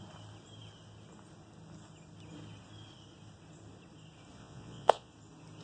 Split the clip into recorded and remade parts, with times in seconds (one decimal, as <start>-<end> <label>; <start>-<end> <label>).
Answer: 0.0-4.4 recorded; 4.4-5.1 remade; 5.1-5.6 recorded